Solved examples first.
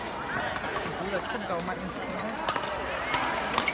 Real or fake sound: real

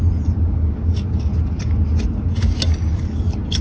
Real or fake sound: real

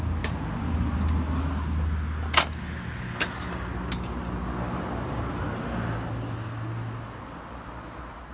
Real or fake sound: real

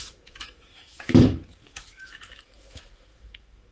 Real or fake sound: fake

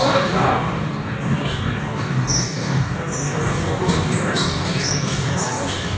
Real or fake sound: fake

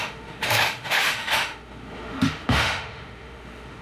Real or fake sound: fake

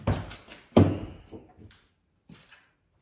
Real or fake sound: real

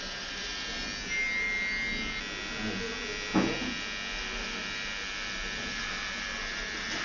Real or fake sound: real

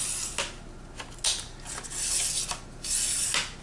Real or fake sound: real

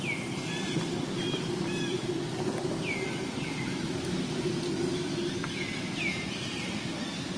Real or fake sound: real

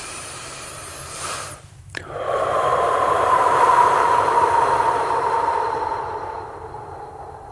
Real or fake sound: fake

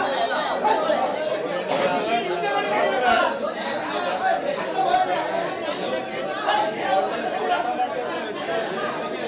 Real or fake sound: real